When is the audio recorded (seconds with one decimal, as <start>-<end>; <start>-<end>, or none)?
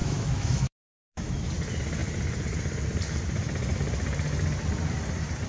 1.5-5.5